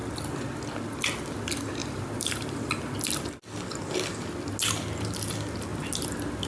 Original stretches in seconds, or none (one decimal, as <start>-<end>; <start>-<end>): 0.0-1.8; 3.0-6.5